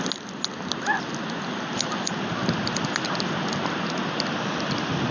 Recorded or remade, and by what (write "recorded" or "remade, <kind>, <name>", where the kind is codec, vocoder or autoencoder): recorded